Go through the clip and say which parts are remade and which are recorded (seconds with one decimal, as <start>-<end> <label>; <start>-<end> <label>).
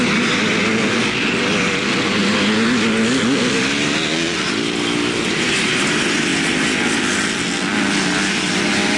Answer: 0.0-9.0 recorded